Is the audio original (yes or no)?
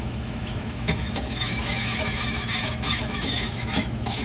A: no